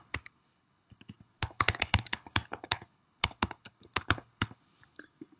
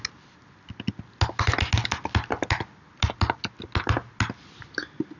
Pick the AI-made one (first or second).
first